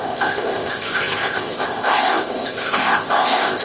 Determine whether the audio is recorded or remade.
remade